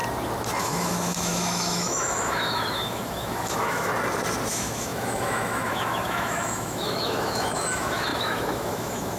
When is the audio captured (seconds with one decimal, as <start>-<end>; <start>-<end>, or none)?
0.0-0.6; 3.9-4.5